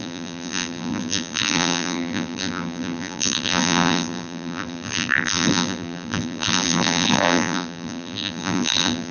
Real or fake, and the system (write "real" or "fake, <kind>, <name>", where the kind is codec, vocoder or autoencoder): fake, vocoder, BigVGAN v2